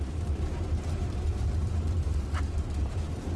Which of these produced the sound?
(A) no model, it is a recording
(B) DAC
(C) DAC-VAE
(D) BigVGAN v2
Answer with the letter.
D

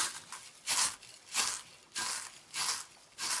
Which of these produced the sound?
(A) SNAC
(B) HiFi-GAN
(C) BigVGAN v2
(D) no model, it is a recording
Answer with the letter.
D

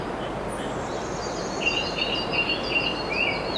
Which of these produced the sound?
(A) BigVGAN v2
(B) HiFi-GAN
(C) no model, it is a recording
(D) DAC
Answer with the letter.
C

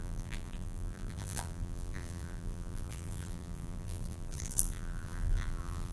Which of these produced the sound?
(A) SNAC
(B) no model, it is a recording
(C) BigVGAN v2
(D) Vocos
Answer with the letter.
C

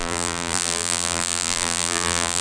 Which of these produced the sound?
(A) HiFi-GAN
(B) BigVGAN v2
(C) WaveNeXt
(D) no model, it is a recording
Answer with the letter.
B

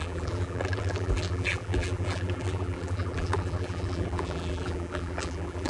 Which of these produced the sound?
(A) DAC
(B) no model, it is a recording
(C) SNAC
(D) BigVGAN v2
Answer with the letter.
D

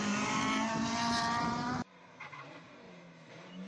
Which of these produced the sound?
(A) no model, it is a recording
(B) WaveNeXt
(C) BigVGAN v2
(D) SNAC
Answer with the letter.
C